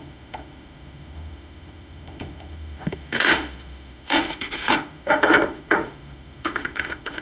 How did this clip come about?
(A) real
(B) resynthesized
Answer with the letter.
B